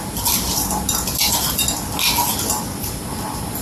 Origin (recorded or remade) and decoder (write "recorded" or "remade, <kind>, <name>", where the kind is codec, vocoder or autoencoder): recorded